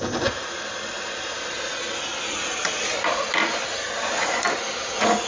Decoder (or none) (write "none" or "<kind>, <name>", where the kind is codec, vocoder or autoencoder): none